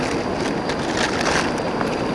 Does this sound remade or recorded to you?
recorded